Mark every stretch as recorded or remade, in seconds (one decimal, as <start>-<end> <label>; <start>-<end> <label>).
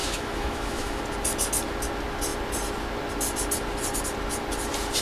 0.0-1.0 remade; 1.0-5.0 recorded